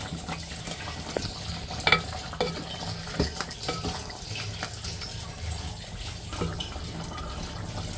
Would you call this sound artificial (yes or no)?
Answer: no